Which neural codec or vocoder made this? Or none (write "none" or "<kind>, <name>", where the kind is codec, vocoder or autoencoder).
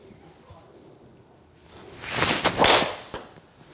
none